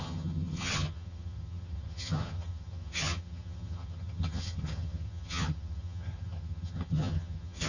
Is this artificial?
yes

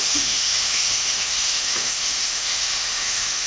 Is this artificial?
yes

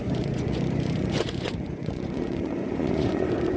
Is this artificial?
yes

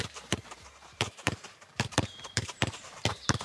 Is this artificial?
yes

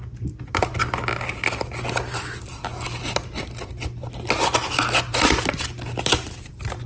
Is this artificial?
no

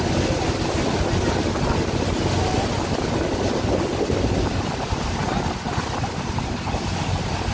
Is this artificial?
no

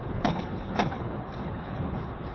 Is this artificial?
yes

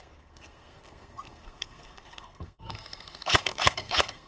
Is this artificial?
yes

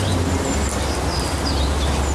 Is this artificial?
no